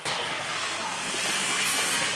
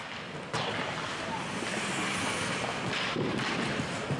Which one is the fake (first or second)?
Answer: first